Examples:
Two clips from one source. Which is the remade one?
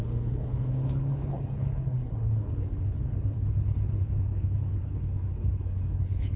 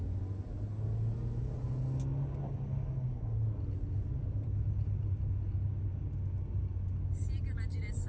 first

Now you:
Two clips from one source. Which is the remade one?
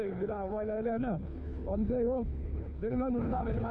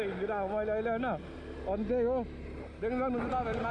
first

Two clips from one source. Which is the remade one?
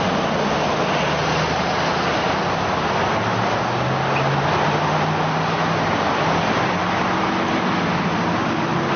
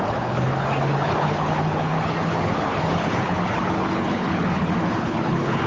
second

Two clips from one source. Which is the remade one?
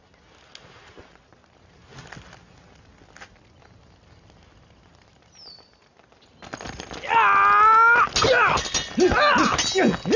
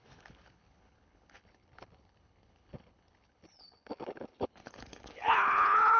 second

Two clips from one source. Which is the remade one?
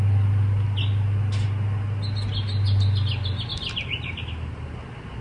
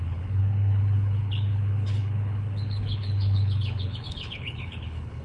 second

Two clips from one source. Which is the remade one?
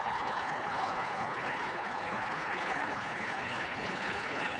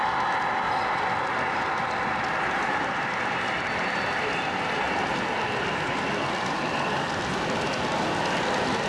first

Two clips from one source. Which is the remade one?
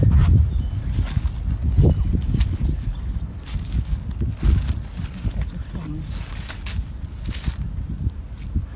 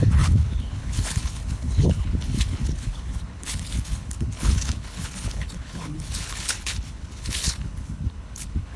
second